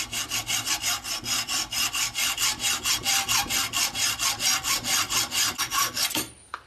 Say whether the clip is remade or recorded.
recorded